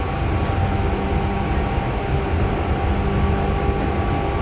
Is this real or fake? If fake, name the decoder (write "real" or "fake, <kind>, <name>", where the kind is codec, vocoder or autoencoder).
real